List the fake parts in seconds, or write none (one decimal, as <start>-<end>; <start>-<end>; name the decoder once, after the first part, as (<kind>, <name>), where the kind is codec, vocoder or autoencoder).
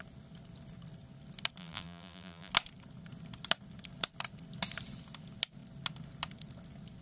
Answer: 1.6-2.5 (vocoder, BigVGAN v2)